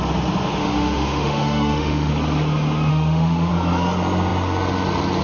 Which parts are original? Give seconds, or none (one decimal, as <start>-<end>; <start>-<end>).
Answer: 0.0-0.6; 2.1-2.9; 3.5-5.2